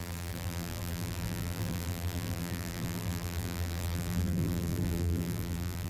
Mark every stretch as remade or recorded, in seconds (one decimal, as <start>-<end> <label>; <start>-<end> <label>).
0.0-5.9 remade